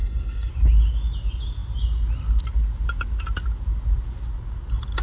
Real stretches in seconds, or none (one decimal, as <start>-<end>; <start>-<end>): 0.5-5.0